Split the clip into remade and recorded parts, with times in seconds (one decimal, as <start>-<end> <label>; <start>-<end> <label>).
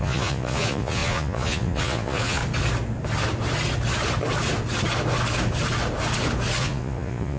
0.0-2.4 remade; 2.4-6.6 recorded; 6.6-7.4 remade